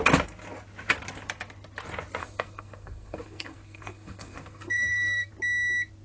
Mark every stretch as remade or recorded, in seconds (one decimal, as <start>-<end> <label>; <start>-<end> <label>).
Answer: 0.0-2.2 recorded; 2.2-5.3 remade; 5.3-6.0 recorded